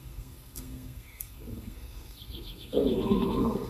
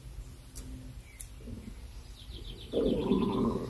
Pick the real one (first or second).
second